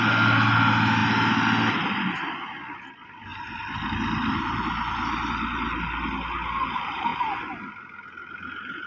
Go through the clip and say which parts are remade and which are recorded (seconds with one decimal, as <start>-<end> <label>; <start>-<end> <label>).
0.0-8.9 recorded